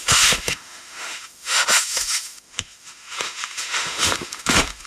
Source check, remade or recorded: remade